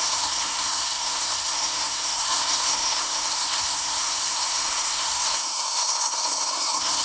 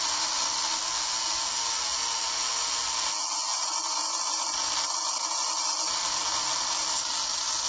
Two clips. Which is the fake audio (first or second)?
first